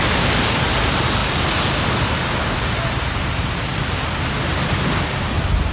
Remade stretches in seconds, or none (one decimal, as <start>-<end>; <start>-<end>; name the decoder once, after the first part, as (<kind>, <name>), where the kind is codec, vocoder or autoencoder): none